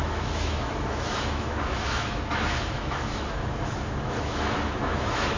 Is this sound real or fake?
fake